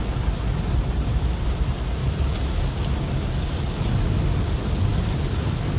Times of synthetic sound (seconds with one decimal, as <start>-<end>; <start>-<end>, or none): none